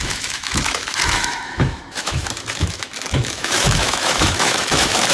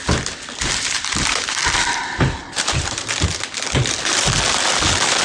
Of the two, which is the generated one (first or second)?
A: first